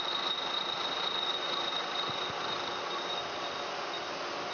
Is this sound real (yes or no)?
yes